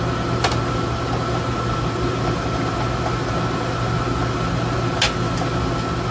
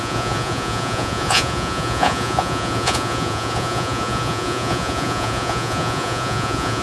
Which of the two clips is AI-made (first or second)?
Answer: second